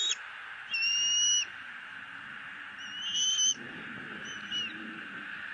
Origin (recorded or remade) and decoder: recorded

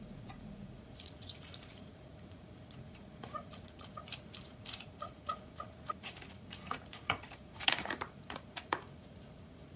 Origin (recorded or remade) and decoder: remade, vocoder, Vocos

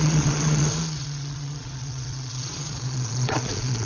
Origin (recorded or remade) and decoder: remade, vocoder, Vocos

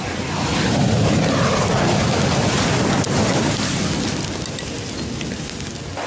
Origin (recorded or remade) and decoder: recorded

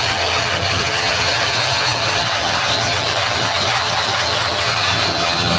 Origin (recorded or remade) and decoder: remade, vocoder, HiFi-GAN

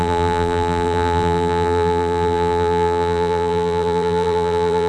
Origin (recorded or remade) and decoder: remade, vocoder, BigVGAN v2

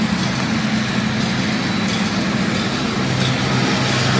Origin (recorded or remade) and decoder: recorded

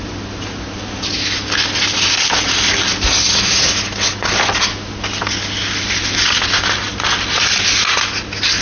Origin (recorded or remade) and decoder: recorded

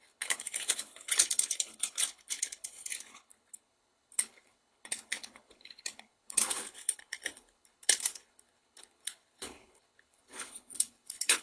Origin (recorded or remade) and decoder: remade, codec, HILCodec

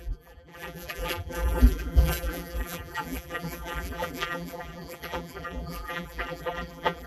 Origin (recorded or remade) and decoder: remade, vocoder, BigVGAN v2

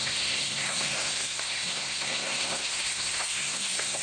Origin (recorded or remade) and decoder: remade, codec, SNAC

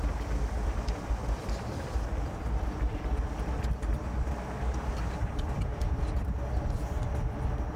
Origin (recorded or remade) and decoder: recorded